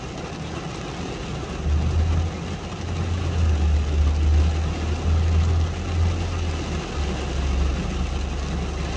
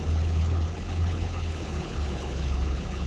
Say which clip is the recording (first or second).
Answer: first